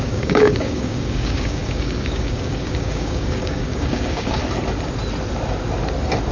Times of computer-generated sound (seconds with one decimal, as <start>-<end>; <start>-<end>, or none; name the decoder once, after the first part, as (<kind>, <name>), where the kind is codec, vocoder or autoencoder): 0.0-4.4 (codec, DAC)